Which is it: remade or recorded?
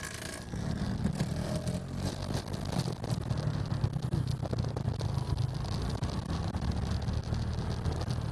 recorded